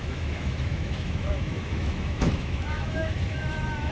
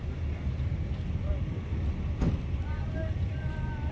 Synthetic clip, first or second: first